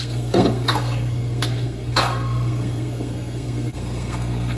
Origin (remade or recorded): remade